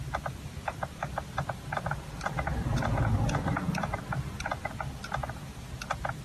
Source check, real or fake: real